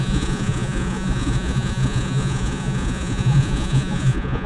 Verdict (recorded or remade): remade